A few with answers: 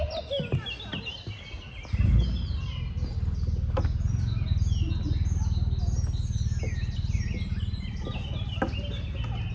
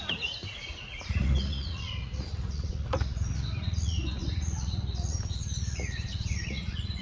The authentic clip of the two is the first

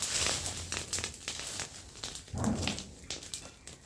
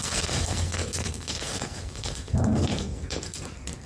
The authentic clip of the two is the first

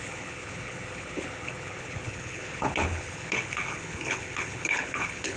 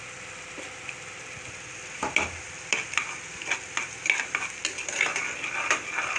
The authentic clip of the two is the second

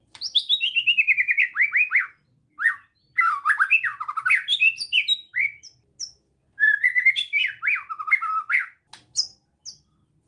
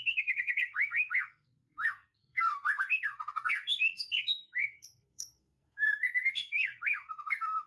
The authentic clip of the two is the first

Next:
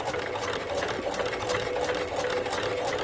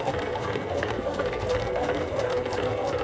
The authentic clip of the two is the first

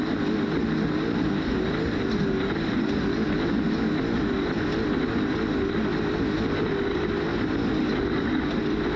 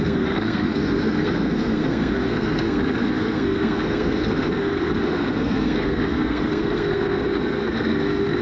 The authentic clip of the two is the first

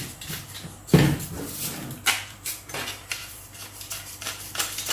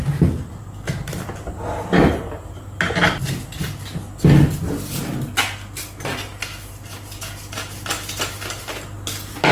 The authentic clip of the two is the second